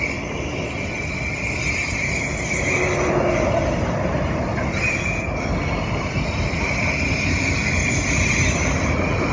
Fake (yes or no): no